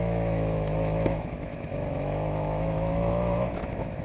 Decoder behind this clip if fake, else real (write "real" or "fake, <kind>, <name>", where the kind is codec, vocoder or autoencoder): fake, autoencoder, DAC-VAE